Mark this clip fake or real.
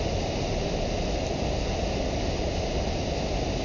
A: real